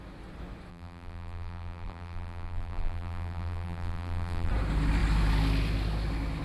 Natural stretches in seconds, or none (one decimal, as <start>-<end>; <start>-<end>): 0.0-0.7; 4.5-6.4